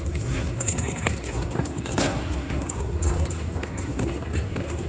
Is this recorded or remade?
remade